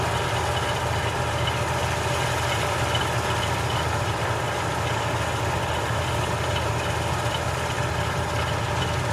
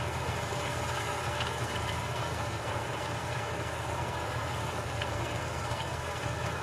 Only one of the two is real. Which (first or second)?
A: first